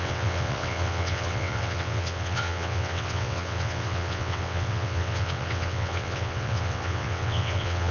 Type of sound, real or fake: fake